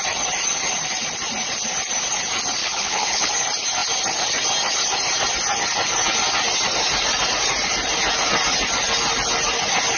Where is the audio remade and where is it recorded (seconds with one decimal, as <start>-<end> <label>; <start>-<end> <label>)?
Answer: 0.0-2.6 recorded; 2.6-3.3 remade; 3.3-10.0 recorded